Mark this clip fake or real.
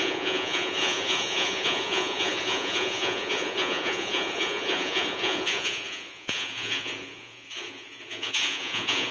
fake